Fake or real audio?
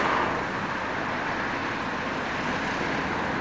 real